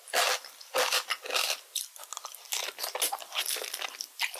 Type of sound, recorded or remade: recorded